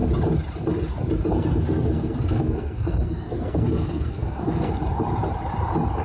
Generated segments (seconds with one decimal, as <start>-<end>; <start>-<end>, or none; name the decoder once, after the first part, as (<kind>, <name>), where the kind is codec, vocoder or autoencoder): 1.3-4.7 (codec, SNAC)